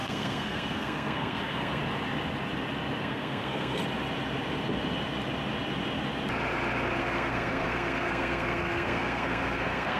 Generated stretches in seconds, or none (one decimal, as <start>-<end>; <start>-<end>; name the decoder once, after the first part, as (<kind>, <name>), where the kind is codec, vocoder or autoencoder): 0.0-1.8 (codec, SNAC); 3.0-3.8; 7.0-10.0

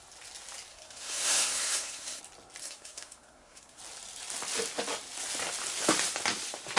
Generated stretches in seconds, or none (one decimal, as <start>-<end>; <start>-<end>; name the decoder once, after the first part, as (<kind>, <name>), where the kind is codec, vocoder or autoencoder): 0.7-2.2 (codec, SNAC); 2.6-3.8

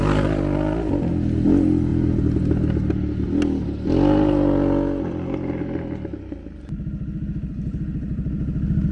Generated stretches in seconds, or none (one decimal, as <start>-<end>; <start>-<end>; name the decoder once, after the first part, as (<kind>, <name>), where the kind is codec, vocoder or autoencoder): none

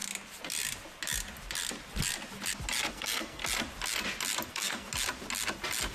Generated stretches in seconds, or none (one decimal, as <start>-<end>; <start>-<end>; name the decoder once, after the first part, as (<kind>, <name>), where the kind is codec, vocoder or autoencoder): 2.9-3.4 (codec, SNAC); 4.5-4.9

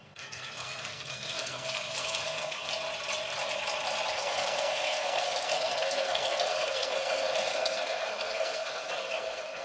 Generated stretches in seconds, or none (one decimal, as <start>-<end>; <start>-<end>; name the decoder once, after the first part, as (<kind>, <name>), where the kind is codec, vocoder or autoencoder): 0.0-2.7 (codec, SNAC); 4.1-9.6